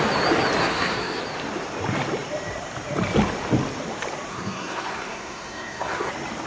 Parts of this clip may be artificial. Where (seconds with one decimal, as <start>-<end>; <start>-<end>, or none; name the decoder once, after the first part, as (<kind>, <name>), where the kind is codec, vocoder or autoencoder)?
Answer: 0.6-1.2 (codec, SNAC); 4.3-6.1